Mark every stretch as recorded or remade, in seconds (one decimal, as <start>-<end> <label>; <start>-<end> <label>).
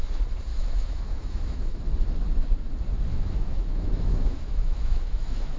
0.0-0.5 recorded; 0.5-1.8 remade; 1.8-3.1 recorded; 3.1-5.6 remade